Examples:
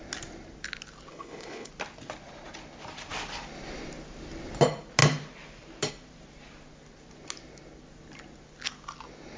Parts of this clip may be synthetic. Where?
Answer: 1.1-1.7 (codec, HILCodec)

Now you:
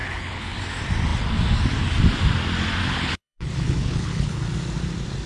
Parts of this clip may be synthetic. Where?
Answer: 0.0-0.6 (codec, HILCodec); 2.8-4.4

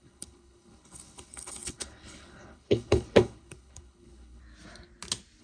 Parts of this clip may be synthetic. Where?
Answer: 0.0-4.4 (codec, HILCodec)

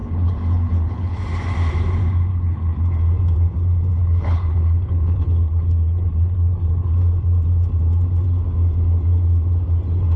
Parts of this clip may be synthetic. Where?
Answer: 0.0-1.2 (codec, HILCodec); 2.3-2.8; 4.0-6.9